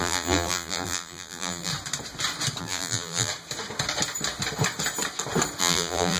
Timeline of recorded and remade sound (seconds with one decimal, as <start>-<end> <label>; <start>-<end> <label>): 0.0-1.7 remade; 1.7-2.6 recorded; 2.6-3.3 remade; 3.3-5.6 recorded; 5.6-6.2 remade